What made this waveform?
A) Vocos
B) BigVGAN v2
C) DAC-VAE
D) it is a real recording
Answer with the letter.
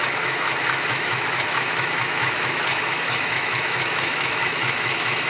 C